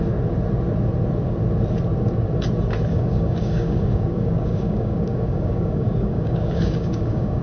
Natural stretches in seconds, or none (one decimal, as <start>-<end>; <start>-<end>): 0.0-2.9